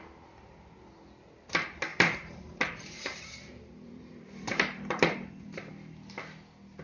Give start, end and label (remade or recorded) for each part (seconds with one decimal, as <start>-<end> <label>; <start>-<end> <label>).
0.0-1.9 recorded; 1.9-5.7 remade; 5.7-6.8 recorded